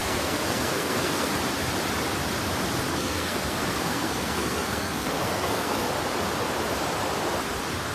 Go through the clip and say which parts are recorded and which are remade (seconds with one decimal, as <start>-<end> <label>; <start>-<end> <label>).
0.0-1.3 remade; 1.3-2.9 recorded; 2.9-5.9 remade; 5.9-7.9 recorded